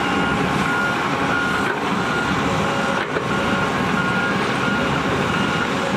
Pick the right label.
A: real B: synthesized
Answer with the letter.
A